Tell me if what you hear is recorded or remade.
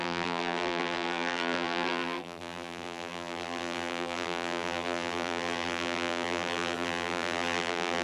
remade